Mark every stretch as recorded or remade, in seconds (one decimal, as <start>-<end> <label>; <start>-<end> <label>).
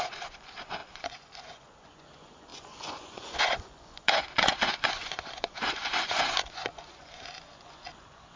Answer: 0.0-8.4 remade